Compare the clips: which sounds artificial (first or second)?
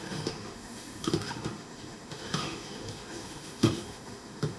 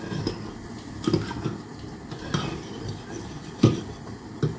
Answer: first